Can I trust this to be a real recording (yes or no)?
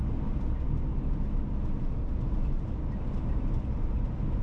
yes